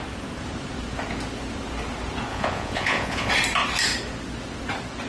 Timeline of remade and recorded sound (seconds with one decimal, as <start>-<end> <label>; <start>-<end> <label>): 0.0-2.3 recorded; 2.3-3.3 remade; 3.3-5.1 recorded